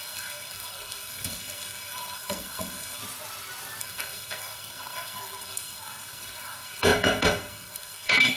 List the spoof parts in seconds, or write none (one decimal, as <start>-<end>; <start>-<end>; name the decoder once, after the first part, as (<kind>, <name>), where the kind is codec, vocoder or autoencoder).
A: 0.0-3.0 (codec, SNAC); 3.8-8.4